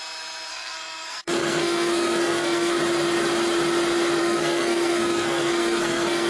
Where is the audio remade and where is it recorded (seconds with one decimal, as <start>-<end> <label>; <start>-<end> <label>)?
0.0-0.5 recorded; 0.5-2.8 remade; 2.8-4.2 recorded; 4.2-6.3 remade